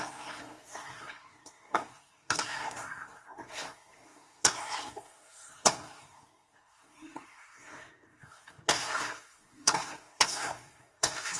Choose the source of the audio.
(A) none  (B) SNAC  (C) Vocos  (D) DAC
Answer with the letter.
B